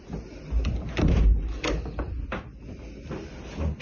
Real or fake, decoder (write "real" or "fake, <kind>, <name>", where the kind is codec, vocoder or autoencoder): real